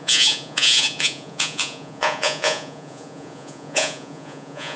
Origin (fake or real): fake